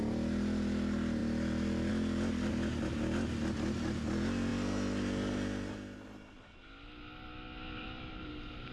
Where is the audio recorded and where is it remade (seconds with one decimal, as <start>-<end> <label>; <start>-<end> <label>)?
0.0-8.7 recorded